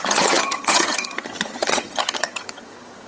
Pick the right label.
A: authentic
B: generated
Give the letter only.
B